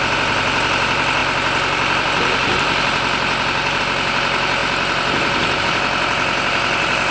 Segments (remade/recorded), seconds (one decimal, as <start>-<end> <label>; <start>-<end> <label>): 0.0-1.2 recorded; 1.2-3.8 remade; 3.8-4.6 recorded; 4.6-5.6 remade; 5.6-7.1 recorded